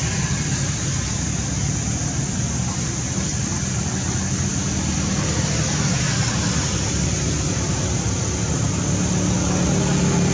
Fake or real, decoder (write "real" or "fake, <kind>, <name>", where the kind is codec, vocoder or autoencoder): real